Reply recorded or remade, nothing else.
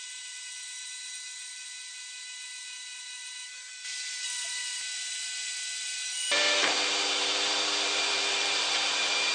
remade